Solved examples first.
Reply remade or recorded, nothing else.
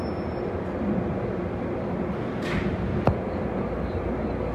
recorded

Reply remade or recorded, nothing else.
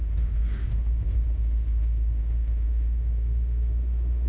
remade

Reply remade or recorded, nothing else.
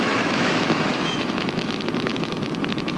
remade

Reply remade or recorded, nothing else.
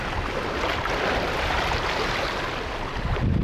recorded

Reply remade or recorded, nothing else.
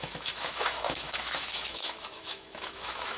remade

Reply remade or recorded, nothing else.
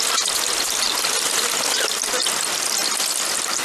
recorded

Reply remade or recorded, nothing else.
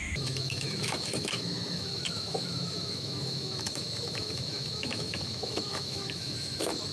remade